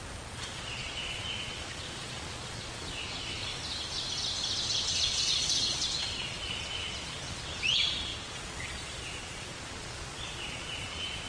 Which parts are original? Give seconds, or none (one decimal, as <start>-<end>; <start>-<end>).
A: 3.5-4.9